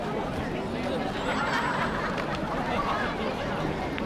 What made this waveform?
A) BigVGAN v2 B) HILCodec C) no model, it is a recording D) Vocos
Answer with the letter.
C